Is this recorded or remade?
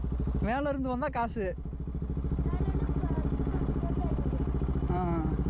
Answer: recorded